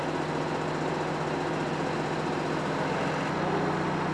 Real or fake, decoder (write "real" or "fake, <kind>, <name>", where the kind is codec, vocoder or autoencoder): real